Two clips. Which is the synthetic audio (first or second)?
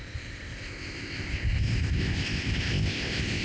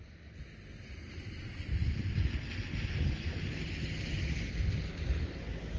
first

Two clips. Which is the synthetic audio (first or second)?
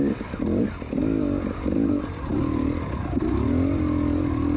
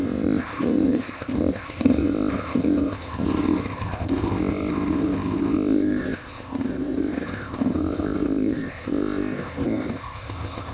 second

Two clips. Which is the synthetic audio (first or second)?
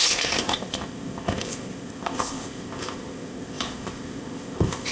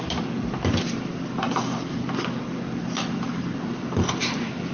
first